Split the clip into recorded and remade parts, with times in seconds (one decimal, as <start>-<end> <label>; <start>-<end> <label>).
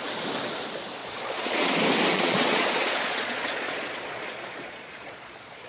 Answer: 0.0-1.0 recorded; 1.0-1.7 remade; 1.7-2.1 recorded; 2.1-5.7 remade